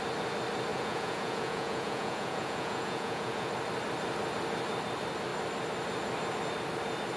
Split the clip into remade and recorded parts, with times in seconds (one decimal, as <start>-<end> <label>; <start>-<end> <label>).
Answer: 0.0-0.7 recorded; 0.7-3.5 remade; 3.5-7.2 recorded